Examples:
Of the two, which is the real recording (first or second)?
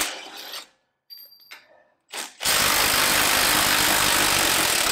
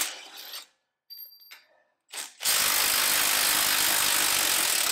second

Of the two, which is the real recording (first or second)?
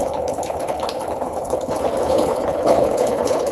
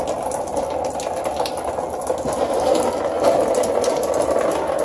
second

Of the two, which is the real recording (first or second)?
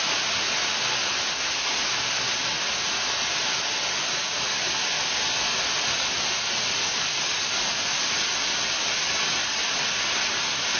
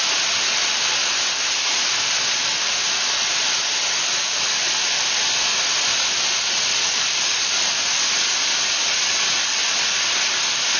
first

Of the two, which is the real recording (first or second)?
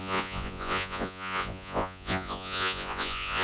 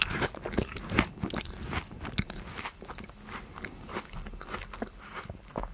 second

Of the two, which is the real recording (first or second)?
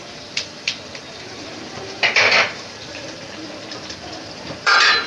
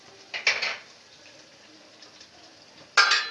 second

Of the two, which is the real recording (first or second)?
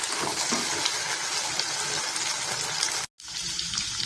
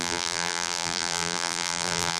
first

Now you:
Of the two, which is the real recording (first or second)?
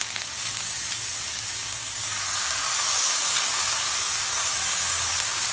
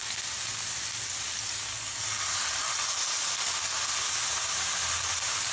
second